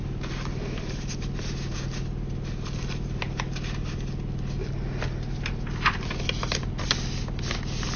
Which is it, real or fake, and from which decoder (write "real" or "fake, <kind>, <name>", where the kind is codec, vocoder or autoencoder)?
real